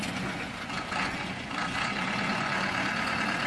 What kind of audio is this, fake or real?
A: fake